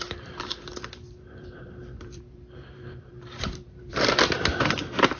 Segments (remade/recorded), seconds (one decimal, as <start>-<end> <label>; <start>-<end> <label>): 0.0-5.2 remade